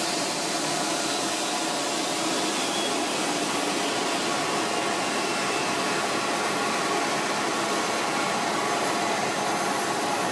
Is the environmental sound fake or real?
real